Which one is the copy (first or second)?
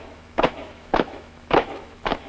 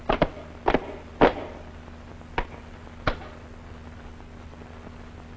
first